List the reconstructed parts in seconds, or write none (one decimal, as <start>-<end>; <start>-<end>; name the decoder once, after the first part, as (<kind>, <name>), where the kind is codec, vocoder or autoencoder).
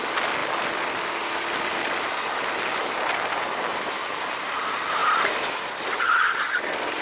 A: none